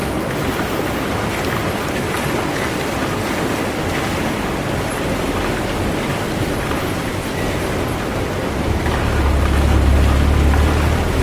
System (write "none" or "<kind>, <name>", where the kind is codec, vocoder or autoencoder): none